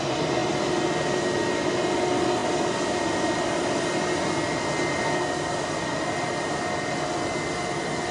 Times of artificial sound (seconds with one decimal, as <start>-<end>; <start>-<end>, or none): none

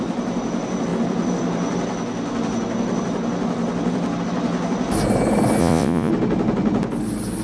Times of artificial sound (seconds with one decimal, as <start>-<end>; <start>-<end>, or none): 5.6-6.1

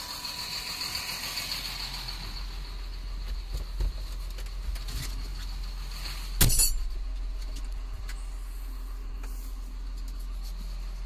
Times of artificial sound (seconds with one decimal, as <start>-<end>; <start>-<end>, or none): none

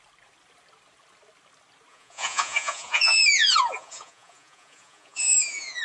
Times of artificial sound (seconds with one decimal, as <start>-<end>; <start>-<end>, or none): 1.9-5.8

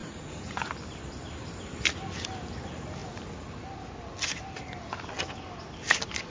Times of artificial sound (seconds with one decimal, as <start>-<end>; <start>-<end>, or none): 0.0-0.7